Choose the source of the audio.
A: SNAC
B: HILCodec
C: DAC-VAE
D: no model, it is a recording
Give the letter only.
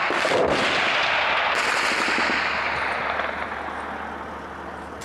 D